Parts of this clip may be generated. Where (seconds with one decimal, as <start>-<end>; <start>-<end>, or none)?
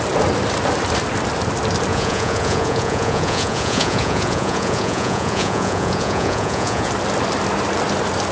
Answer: 1.9-6.9